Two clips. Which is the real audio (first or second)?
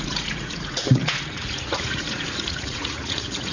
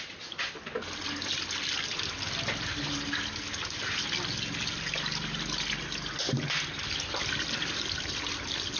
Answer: second